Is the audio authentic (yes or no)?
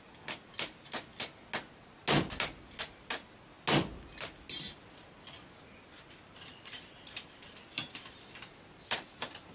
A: yes